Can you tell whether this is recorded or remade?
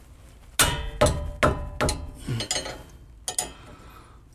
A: recorded